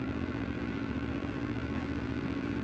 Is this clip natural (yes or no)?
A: no